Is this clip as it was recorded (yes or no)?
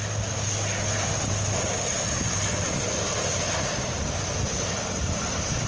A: yes